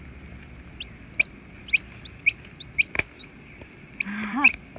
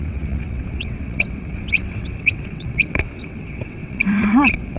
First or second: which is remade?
second